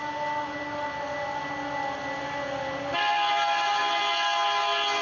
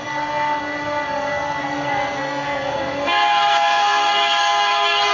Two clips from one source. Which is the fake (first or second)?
second